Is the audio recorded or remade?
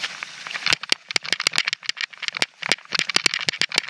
recorded